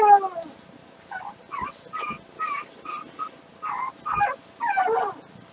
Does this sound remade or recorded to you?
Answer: recorded